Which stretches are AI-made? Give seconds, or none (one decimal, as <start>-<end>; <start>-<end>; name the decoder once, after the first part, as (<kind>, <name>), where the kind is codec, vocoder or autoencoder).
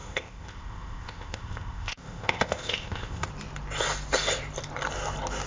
0.0-3.3 (codec, ZipCodec)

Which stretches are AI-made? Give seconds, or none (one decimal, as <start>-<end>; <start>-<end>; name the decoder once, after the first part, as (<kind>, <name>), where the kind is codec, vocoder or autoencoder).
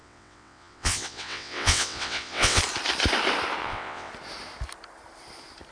0.0-2.6 (vocoder, WaveNeXt); 3.6-4.1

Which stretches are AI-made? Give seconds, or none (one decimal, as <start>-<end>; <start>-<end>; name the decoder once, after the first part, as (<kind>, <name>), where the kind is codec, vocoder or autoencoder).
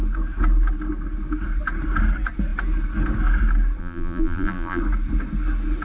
3.8-4.8 (vocoder, BigVGAN v2)